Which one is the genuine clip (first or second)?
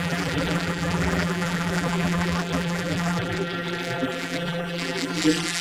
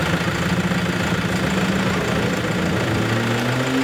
second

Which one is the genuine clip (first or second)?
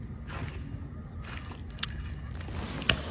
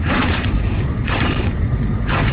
first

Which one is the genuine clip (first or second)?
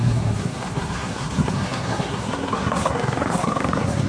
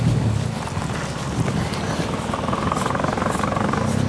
second